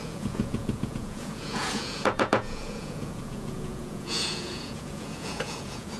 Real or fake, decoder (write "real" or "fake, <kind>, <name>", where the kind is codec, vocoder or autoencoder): fake, vocoder, Vocos